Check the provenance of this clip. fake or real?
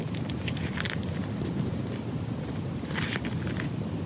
real